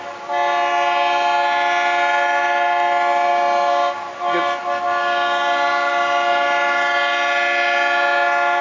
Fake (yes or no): no